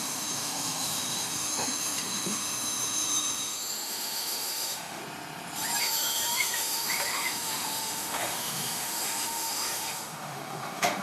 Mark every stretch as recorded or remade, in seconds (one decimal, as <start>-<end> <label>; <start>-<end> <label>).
0.0-5.0 remade; 5.0-5.8 recorded; 5.8-11.0 remade